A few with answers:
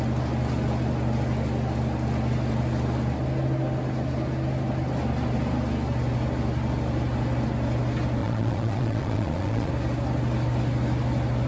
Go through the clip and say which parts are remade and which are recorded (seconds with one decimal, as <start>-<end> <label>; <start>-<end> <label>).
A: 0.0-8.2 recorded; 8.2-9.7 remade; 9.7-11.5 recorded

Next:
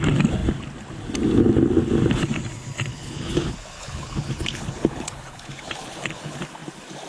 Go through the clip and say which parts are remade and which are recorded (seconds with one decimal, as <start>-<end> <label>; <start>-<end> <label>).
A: 0.0-2.9 recorded; 2.9-6.4 remade; 6.4-7.1 recorded

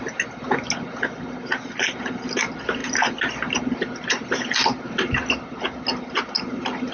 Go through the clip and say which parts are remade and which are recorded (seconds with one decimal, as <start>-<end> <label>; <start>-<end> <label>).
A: 0.0-6.9 recorded

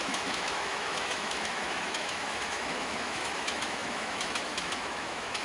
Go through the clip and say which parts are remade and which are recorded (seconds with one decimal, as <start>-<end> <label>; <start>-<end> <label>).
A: 0.0-5.4 remade

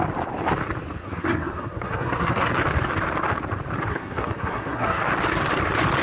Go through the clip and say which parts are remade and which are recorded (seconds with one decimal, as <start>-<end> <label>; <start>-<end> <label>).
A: 0.0-1.0 recorded; 1.0-2.5 remade; 2.5-3.9 recorded; 3.9-5.1 remade; 5.1-6.0 recorded

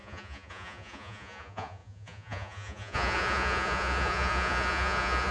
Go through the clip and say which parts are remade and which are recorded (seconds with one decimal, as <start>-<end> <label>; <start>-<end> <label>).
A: 0.0-5.3 remade